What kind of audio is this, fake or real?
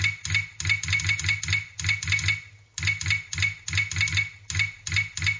real